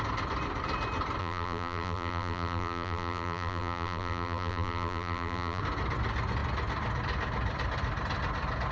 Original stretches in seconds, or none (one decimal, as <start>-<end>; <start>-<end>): 0.0-1.2; 5.6-8.7